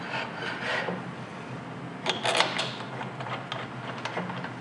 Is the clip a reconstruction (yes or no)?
no